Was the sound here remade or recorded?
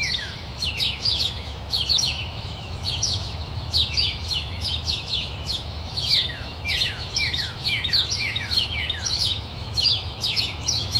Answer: remade